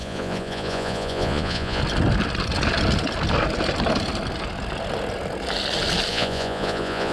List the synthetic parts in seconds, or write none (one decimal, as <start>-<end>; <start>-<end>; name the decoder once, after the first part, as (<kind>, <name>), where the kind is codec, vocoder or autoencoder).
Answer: 0.0-1.8 (vocoder, Vocos); 6.1-7.1